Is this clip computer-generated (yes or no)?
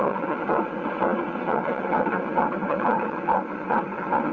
yes